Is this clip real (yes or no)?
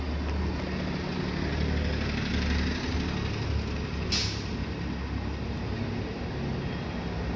yes